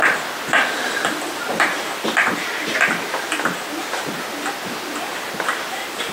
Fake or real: real